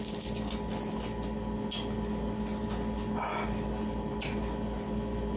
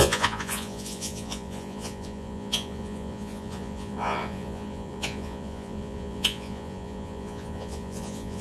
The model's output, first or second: second